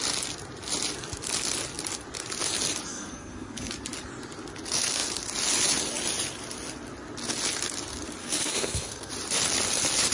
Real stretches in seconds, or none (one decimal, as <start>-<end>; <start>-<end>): 0.0-2.9; 3.7-8.2; 9.1-10.1